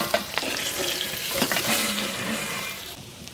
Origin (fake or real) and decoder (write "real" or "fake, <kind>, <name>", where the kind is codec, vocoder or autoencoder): fake, vocoder, BigVGAN v2